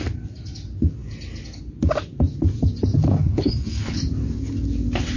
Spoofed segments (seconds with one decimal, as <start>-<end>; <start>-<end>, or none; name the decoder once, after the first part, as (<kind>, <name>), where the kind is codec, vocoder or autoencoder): 3.0-4.0 (codec, HILCodec)